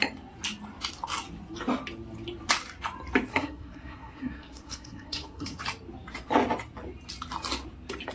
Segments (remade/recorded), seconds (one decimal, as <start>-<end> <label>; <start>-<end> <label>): 0.0-3.3 recorded; 3.3-5.6 remade; 5.6-8.1 recorded

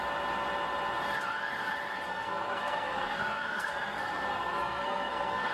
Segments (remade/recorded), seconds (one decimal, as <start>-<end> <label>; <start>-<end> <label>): 0.0-2.1 recorded; 2.1-5.5 remade

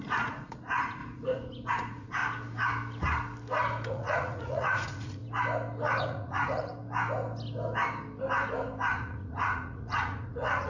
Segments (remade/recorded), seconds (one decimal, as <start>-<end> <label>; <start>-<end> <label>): 0.0-1.0 remade; 1.0-1.7 recorded; 1.7-2.2 remade; 2.2-3.9 recorded; 3.9-5.2 remade; 5.2-6.0 recorded; 6.0-6.7 remade; 6.7-8.9 recorded; 8.9-10.7 remade

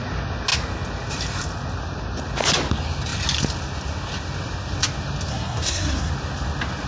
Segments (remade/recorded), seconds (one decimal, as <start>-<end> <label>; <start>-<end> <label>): 0.0-5.3 recorded; 5.3-6.1 remade; 6.1-6.9 recorded

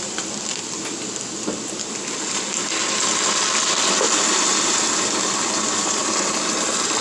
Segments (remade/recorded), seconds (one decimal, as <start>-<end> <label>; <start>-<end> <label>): 0.0-6.0 recorded; 6.0-7.0 remade

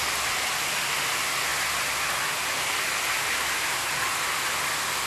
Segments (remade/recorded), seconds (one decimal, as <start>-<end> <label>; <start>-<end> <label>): 0.0-5.1 recorded